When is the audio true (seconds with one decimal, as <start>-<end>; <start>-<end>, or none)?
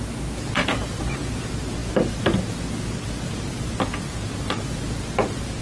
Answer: 0.0-5.6